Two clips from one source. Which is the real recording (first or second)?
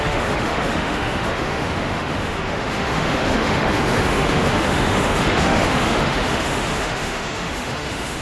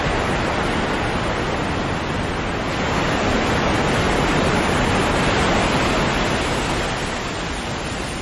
second